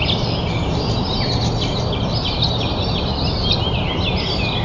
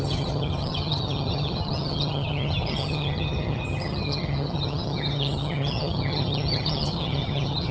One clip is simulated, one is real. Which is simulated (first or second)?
second